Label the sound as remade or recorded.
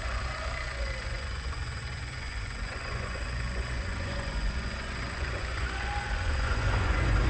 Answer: remade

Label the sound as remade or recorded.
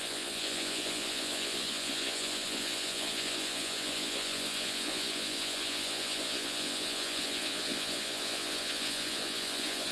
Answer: remade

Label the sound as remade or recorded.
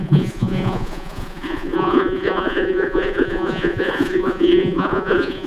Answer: remade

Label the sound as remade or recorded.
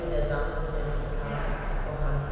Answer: recorded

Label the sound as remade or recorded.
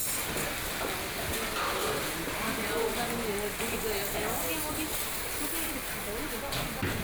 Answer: recorded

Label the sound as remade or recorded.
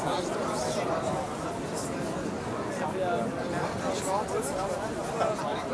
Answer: recorded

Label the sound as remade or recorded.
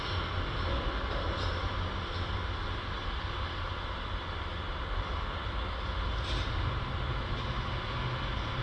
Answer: recorded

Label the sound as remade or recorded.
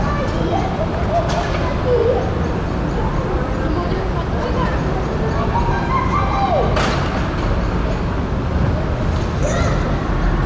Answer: recorded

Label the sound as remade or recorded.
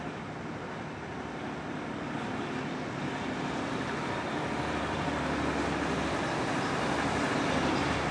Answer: recorded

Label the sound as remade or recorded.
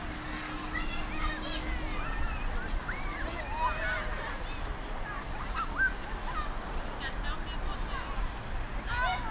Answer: recorded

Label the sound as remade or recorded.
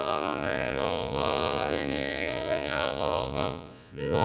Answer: remade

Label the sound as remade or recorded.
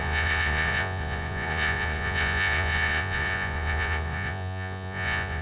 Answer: remade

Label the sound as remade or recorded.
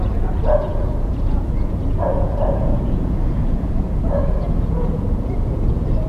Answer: remade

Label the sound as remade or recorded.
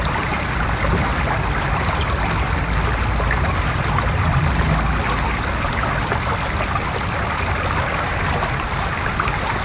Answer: recorded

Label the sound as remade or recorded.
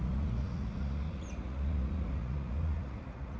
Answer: remade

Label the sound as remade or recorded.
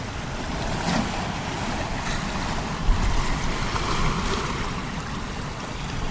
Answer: recorded